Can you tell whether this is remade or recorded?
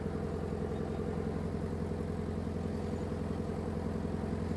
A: recorded